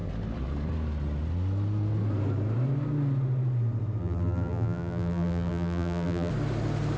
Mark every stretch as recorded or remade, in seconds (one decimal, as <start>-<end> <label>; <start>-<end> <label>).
0.0-4.0 recorded; 4.0-6.3 remade; 6.3-7.0 recorded